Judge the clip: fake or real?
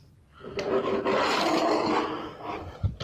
real